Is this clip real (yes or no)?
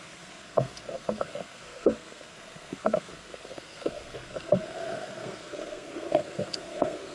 no